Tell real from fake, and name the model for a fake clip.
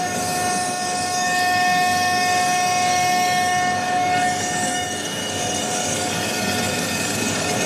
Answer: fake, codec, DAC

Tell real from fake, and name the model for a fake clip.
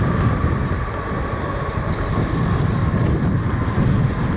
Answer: real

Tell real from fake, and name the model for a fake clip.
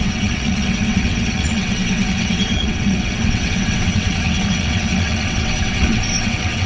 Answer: fake, vocoder, WaveNeXt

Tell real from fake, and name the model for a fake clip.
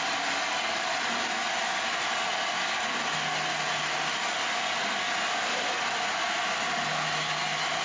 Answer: real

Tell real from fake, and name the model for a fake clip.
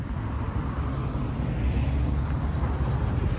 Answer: fake, vocoder, BigVGAN v2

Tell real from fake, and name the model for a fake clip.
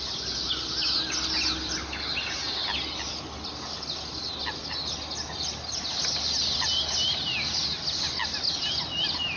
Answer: real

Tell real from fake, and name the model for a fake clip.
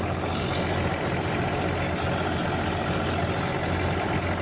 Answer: real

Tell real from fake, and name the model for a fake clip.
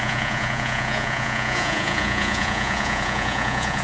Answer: fake, vocoder, Vocos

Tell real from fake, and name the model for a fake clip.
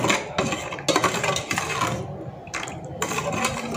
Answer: real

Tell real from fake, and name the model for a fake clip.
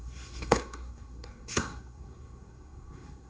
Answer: fake, codec, SNAC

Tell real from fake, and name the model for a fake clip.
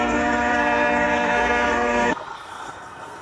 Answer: fake, codec, SNAC